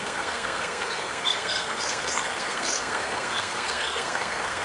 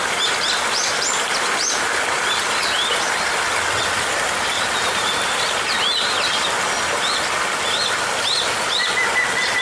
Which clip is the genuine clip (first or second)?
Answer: second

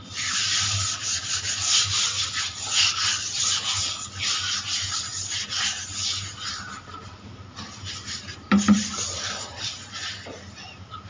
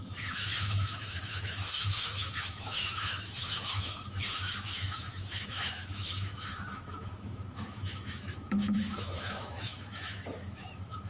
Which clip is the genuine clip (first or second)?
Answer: first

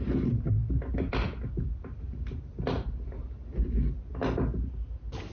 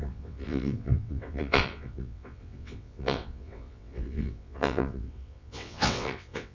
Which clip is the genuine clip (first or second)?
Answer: first